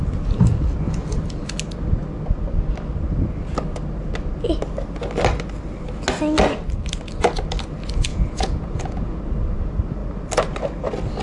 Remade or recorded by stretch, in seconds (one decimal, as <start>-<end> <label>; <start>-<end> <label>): 0.0-8.1 recorded; 8.1-9.2 remade; 9.2-11.2 recorded